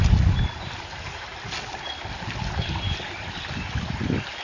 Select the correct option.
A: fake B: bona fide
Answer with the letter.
B